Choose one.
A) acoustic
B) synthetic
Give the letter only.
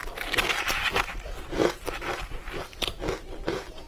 A